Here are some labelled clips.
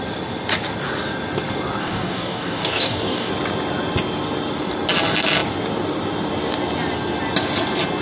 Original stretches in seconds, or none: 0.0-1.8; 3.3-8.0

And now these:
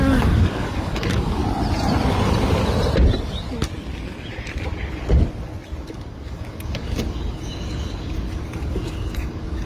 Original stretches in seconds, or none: 1.4-5.9